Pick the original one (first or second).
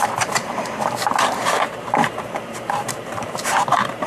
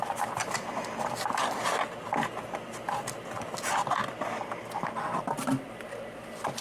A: second